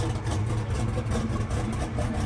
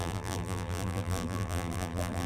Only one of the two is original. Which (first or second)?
first